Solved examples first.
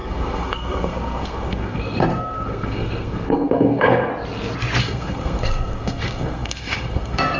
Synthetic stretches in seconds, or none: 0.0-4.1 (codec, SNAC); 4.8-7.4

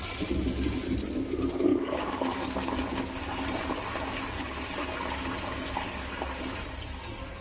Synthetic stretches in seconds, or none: 1.7-2.7 (codec, DAC)